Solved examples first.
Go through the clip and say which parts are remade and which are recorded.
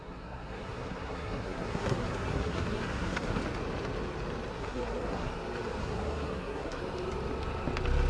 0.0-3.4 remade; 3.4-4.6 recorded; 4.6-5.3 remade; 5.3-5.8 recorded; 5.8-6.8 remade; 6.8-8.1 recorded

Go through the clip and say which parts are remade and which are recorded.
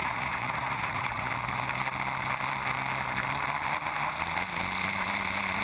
0.0-1.3 remade; 1.3-5.6 recorded